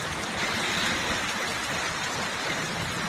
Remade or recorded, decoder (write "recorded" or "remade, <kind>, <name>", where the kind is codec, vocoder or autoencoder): recorded